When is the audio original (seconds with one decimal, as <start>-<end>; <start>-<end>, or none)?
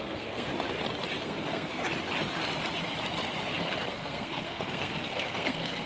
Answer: 0.5-1.2; 1.8-3.9